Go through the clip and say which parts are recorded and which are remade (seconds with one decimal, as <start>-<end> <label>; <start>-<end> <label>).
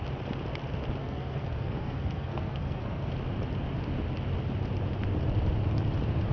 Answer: 0.0-1.0 recorded; 1.0-3.1 remade; 3.1-6.3 recorded